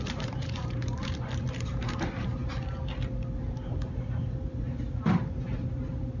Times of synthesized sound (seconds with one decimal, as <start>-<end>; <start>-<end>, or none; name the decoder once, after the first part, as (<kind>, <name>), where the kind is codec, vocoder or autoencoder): 0.0-2.4 (vocoder, BigVGAN v2)